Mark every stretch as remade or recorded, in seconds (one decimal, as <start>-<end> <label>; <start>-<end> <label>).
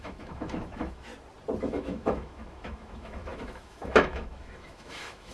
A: 0.0-1.1 remade; 1.1-1.6 recorded; 1.6-5.3 remade